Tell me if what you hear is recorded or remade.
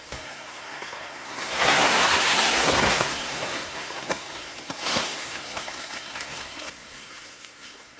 remade